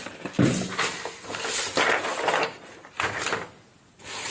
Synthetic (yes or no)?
no